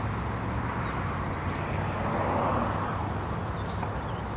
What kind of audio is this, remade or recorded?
recorded